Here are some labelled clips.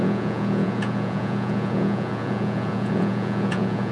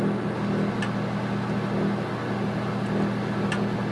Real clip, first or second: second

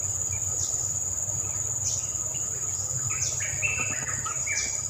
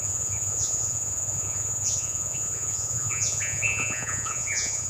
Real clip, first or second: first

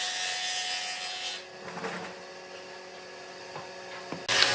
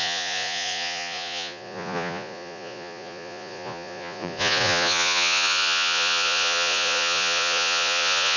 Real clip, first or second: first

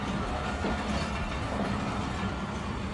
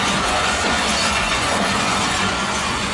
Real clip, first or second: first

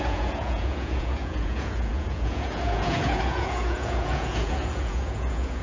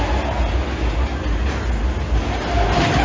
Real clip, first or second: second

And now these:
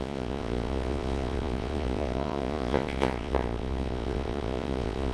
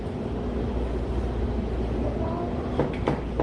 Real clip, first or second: second